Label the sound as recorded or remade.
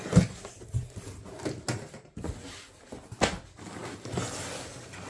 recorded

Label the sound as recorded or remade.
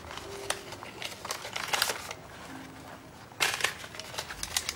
recorded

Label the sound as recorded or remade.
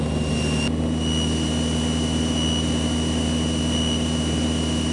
recorded